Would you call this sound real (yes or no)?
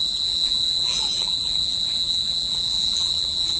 no